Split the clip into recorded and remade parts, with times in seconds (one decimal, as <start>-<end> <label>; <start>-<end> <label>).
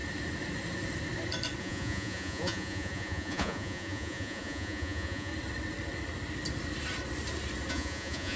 0.0-1.6 recorded; 1.6-5.3 remade; 5.3-7.7 recorded; 7.7-8.4 remade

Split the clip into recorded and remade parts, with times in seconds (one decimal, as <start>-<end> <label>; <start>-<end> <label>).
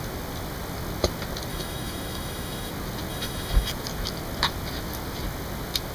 0.0-1.5 recorded; 1.5-2.7 remade; 2.7-3.1 recorded; 3.1-3.7 remade; 3.7-5.9 recorded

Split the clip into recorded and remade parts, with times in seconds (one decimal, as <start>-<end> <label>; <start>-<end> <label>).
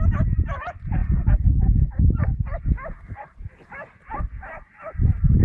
0.0-5.4 recorded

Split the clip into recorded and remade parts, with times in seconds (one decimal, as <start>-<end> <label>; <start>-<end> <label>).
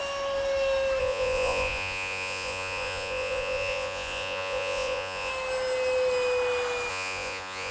0.0-1.0 recorded; 1.0-5.3 remade; 5.3-6.9 recorded; 6.9-7.7 remade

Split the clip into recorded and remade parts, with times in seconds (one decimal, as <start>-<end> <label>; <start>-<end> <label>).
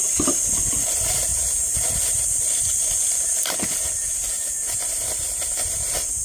0.0-6.2 recorded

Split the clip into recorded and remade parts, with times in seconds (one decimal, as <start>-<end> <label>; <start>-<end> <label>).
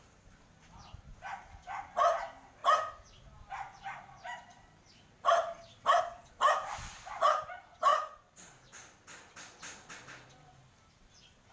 0.0-11.5 recorded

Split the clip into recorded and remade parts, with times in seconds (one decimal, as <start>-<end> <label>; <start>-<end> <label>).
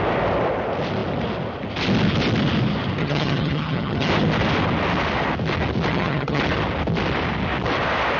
0.0-3.0 recorded; 3.0-4.1 remade; 4.1-5.9 recorded; 5.9-6.4 remade; 6.4-8.2 recorded